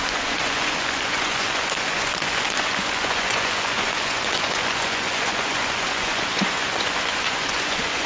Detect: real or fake fake